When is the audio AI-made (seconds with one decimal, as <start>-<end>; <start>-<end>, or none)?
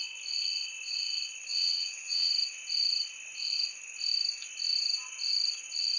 1.5-2.3